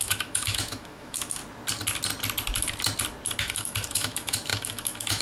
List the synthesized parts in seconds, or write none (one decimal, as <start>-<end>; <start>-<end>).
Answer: 0.0-1.4; 3.4-5.2